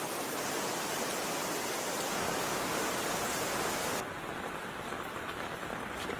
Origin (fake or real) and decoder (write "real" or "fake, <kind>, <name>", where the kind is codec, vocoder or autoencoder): real